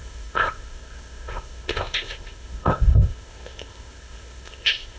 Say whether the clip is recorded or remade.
remade